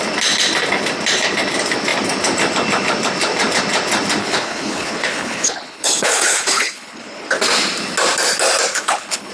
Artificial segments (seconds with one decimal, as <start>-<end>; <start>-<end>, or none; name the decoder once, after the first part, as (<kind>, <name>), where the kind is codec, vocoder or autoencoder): 4.2-7.4 (codec, HILCodec); 8.7-9.3